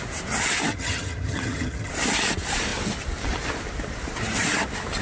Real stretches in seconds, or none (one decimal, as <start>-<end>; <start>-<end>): 0.0-0.7; 1.9-5.0